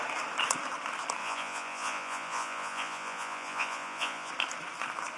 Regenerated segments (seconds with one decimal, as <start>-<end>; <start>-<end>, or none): 1.2-4.3